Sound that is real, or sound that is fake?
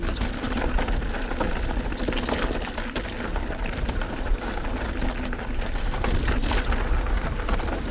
real